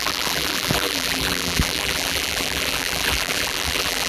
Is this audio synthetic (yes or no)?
yes